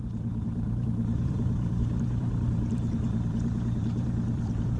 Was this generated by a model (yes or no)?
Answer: yes